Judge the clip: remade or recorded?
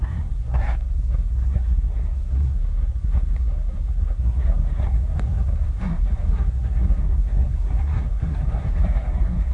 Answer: remade